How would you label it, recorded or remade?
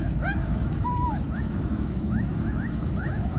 remade